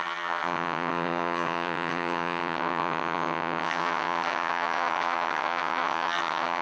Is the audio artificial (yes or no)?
yes